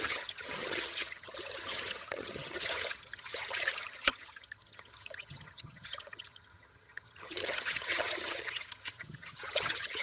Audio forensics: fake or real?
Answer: fake